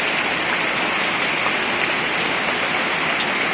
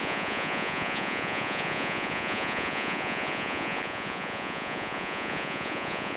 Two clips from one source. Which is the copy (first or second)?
second